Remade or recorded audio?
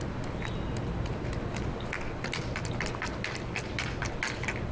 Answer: recorded